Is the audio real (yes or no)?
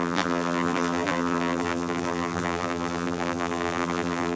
no